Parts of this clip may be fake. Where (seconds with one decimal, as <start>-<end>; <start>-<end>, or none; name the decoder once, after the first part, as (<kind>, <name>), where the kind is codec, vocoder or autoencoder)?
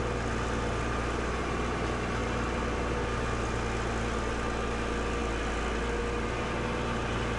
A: none